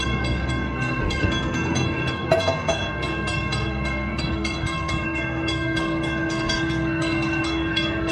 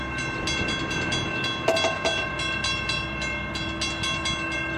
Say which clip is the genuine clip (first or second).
second